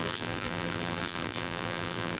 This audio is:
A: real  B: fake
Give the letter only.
B